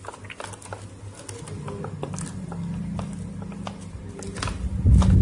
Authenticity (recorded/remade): recorded